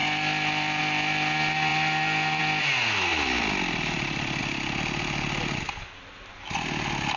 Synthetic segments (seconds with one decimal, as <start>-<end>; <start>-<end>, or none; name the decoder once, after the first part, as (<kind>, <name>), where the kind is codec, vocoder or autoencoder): 0.0-0.8 (vocoder, BigVGAN v2); 1.7-2.4; 3.1-4.4